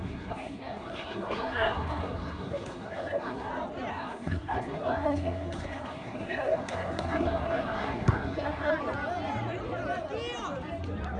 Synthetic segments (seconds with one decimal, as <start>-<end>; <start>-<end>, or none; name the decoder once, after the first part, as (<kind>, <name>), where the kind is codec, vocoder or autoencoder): 0.0-3.5 (codec, SNAC); 3.9-8.7